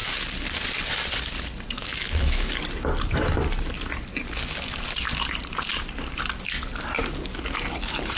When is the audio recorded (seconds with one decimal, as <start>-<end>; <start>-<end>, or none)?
0.0-1.8; 2.5-8.2